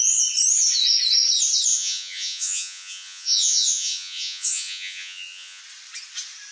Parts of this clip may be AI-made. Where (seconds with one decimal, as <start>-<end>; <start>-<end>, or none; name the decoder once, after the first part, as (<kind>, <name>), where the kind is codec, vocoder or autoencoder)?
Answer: 1.7-5.6 (vocoder, Vocos)